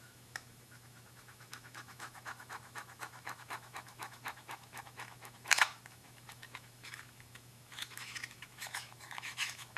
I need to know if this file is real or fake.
fake